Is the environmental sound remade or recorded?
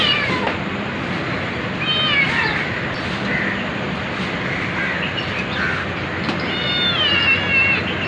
recorded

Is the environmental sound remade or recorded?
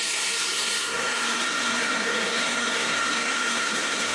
remade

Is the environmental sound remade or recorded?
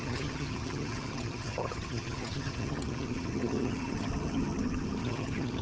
remade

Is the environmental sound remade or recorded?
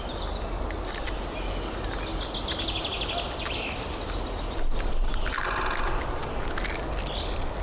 recorded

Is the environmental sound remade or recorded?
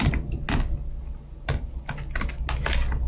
recorded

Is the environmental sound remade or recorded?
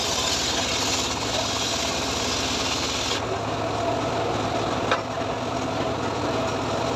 recorded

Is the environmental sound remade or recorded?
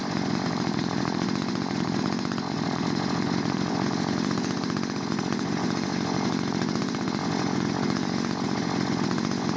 remade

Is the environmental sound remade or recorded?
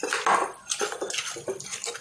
recorded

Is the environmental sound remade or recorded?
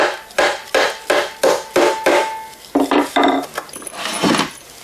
recorded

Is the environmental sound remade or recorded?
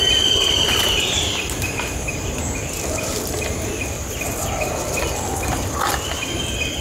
remade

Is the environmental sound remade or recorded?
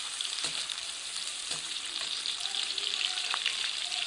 remade